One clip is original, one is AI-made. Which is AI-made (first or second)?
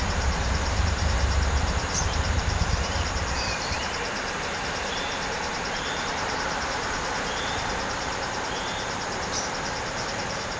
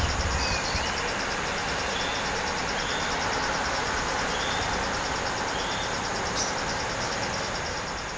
first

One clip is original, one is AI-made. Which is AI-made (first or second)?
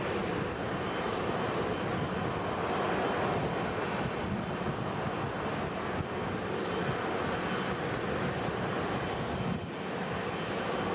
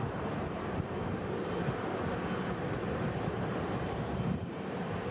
second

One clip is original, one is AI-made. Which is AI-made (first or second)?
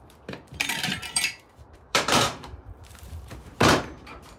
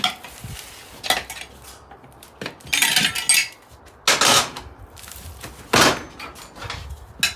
first